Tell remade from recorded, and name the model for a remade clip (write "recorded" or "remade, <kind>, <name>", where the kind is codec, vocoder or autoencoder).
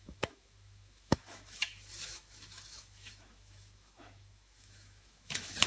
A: remade, autoencoder, DAC-VAE